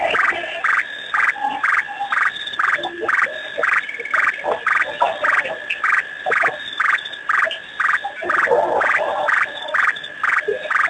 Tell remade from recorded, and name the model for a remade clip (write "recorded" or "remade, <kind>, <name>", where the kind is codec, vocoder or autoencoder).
recorded